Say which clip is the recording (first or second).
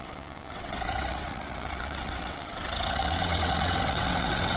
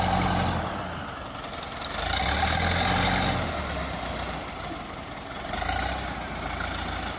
second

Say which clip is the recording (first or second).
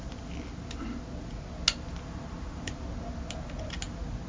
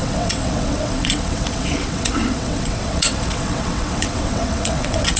first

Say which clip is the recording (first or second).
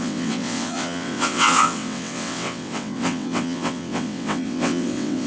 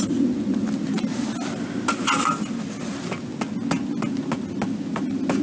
second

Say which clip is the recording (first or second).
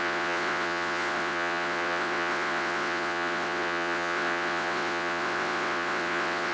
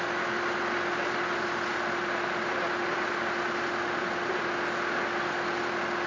second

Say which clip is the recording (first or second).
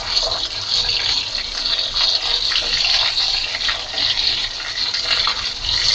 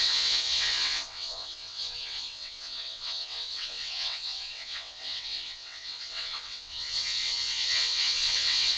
first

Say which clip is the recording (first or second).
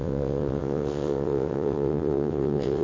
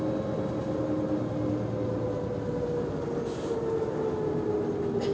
second